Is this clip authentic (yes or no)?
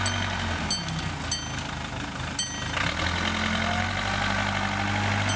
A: yes